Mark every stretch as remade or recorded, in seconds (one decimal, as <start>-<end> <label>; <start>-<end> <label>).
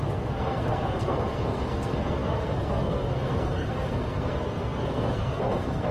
0.0-5.9 remade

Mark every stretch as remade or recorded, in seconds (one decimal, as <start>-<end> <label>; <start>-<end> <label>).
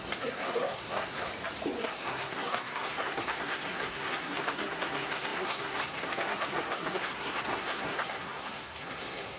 0.0-1.3 remade; 1.3-1.8 recorded; 1.8-9.4 remade